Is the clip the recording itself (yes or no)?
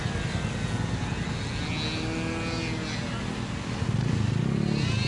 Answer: yes